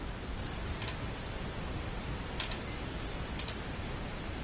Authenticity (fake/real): real